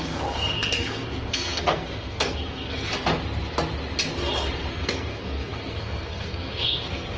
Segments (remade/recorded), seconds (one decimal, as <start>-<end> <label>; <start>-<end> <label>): 0.0-2.9 remade; 2.9-4.7 recorded; 4.7-7.2 remade